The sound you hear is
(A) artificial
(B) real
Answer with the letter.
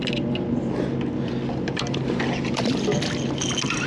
B